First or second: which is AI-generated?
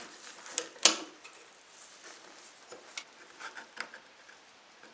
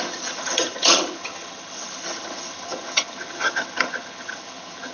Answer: second